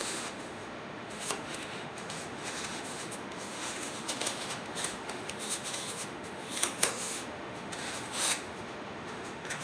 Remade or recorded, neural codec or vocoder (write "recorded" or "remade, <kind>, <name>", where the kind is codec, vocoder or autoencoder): remade, autoencoder, DAC-VAE